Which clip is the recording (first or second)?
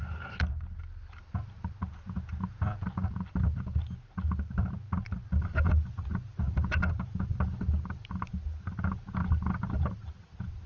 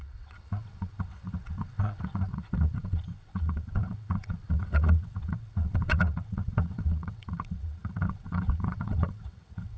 first